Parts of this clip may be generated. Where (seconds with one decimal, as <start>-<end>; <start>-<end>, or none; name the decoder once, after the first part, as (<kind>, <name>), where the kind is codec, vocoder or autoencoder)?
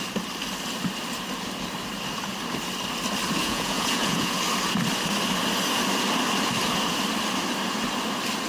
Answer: 3.4-4.4 (vocoder, Vocos)